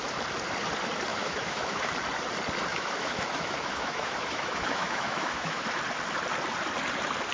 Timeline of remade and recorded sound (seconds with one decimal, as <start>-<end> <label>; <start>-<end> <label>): 0.0-1.1 recorded; 1.1-1.9 remade; 1.9-2.7 recorded; 2.7-5.8 remade; 5.8-7.3 recorded